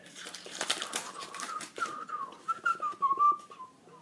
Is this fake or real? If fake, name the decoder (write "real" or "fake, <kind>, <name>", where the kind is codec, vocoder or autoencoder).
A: fake, vocoder, BigVGAN v2